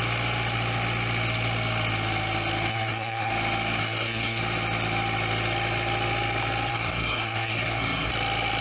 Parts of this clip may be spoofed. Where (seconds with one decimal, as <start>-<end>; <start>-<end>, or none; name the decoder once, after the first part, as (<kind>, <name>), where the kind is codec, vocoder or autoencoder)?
2.7-3.3 (codec, SNAC); 3.8-4.4; 6.7-8.1